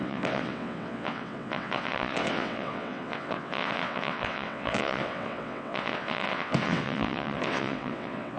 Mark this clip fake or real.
fake